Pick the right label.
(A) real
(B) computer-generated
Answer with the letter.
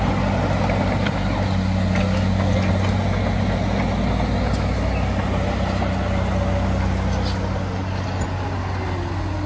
A